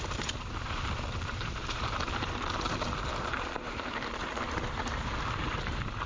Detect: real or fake fake